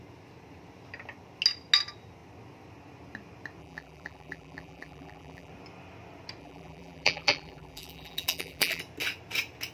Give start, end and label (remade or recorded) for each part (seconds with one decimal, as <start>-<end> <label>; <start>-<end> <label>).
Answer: 0.0-3.6 recorded; 3.6-5.5 remade; 5.5-6.4 recorded; 6.4-8.8 remade; 8.8-9.7 recorded

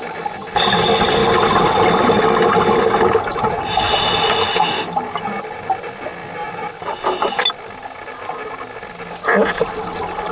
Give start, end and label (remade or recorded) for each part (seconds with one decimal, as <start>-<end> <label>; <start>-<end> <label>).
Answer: 0.0-10.3 recorded

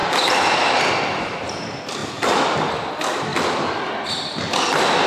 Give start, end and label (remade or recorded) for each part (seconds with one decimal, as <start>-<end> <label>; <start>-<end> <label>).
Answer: 0.0-3.3 remade; 3.3-3.9 recorded; 3.9-5.1 remade

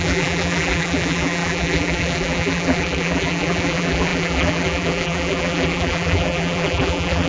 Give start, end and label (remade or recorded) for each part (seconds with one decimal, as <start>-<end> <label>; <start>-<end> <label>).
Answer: 0.0-7.3 remade

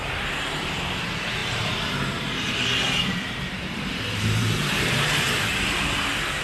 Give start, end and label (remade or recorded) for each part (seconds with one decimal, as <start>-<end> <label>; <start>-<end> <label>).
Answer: 0.0-5.5 remade; 5.5-6.4 recorded

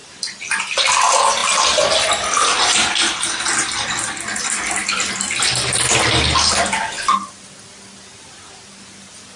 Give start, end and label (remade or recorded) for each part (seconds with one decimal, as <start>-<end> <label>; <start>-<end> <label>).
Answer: 0.0-9.4 recorded